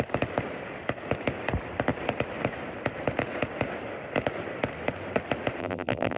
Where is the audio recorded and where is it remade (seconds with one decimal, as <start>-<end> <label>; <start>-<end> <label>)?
0.0-5.6 recorded; 5.6-6.2 remade